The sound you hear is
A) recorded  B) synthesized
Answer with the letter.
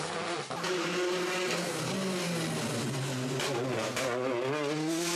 A